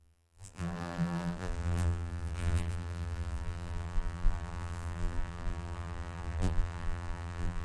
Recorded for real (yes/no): no